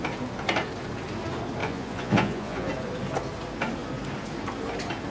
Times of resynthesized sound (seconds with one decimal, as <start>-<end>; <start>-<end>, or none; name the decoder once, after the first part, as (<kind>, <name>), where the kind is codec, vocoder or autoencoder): 1.6-2.7 (vocoder, Vocos)